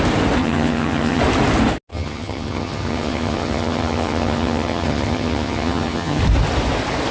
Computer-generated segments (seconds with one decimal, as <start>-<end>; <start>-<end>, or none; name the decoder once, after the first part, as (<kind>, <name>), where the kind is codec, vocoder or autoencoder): 0.4-1.2 (vocoder, HiFi-GAN); 1.9-6.2